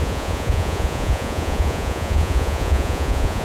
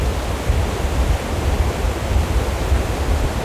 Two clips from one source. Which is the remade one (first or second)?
first